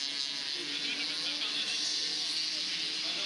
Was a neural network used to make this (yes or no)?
no